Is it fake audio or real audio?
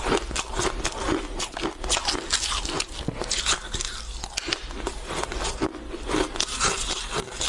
real